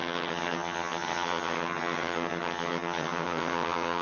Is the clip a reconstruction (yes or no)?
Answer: yes